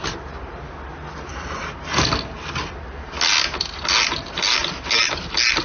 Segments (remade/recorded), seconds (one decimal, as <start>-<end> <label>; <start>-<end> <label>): 0.0-5.6 recorded